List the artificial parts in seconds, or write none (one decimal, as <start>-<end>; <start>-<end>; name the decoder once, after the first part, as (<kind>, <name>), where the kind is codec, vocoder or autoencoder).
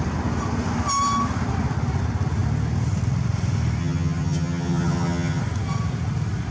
3.8-5.4 (vocoder, HiFi-GAN)